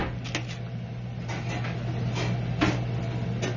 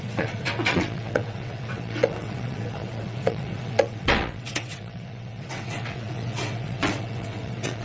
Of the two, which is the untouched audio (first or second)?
first